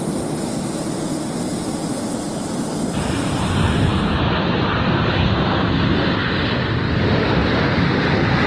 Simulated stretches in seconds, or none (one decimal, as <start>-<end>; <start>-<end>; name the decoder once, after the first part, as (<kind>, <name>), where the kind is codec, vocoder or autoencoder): none